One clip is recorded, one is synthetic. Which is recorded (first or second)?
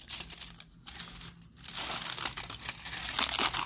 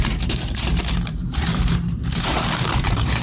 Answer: first